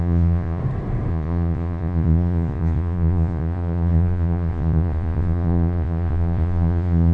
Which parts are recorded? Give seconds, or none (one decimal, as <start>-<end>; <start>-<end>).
0.6-1.1